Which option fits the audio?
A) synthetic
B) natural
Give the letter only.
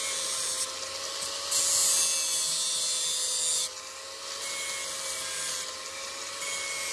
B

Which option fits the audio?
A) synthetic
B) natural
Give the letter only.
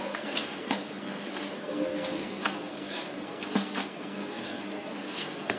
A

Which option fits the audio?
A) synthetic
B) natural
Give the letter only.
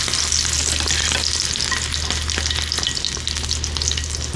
B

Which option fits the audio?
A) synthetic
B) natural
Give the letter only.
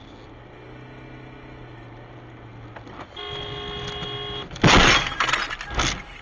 B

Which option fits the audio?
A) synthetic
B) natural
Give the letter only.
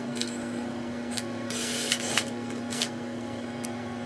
A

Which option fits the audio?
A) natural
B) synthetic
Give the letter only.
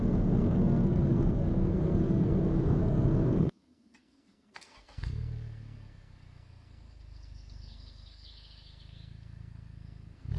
B